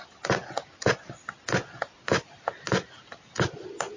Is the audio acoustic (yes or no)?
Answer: yes